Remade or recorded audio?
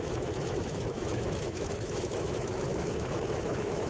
remade